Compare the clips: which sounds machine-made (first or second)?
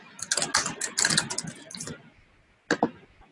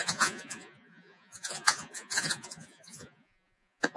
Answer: second